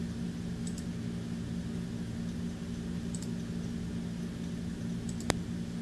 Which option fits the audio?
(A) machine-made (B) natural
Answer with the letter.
B